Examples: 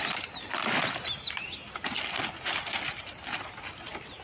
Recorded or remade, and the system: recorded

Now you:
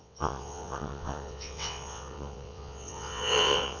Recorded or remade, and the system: remade, vocoder, WaveNeXt